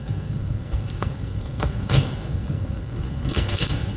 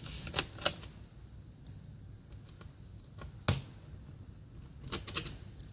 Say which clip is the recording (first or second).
second